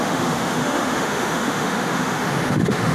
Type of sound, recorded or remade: remade